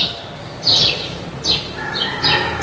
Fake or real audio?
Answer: real